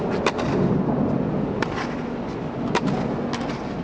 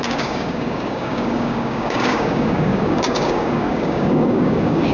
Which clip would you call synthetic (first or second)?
second